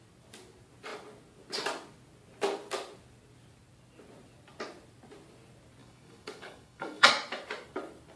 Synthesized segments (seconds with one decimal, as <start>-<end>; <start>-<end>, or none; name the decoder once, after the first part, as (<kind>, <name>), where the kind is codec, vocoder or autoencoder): 5.8-7.1 (codec, DAC)